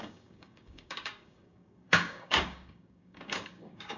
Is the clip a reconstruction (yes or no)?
yes